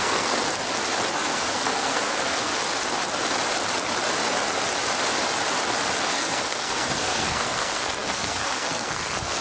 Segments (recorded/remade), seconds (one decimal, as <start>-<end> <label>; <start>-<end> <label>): 0.0-0.4 remade; 0.4-1.1 recorded; 1.1-2.5 remade; 2.5-6.1 recorded; 6.1-9.4 remade